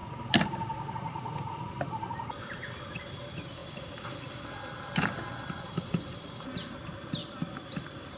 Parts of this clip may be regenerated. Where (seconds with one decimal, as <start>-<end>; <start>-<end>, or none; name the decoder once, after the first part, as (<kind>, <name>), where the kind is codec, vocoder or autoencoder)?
7.2-8.2 (vocoder, BigVGAN v2)